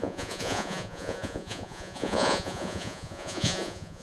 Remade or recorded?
remade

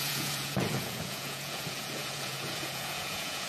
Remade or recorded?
remade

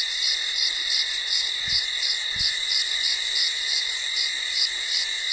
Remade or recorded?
recorded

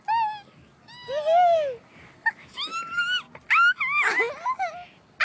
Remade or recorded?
recorded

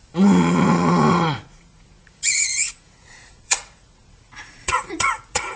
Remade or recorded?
remade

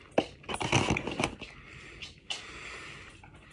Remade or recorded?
recorded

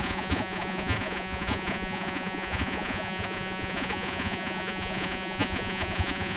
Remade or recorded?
remade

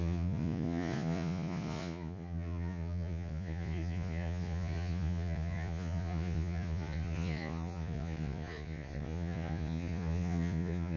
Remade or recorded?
remade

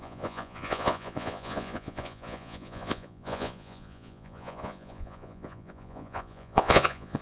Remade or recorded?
remade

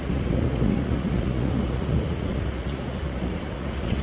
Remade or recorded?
remade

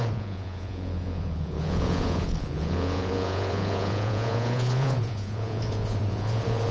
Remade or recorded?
remade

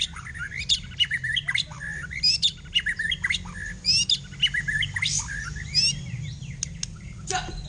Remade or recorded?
recorded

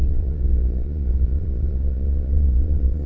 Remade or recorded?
remade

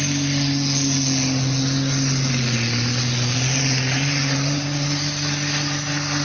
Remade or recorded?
recorded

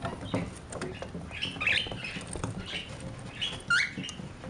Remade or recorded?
recorded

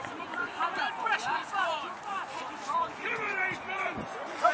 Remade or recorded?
remade